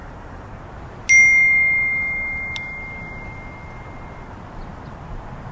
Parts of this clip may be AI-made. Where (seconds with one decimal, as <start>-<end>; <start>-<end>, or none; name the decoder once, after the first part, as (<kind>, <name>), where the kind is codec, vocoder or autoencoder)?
0.0-0.5 (vocoder, BigVGAN v2)